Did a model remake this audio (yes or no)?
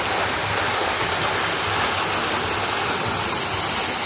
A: no